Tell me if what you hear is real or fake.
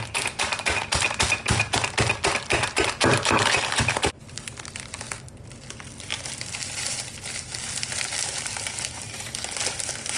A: real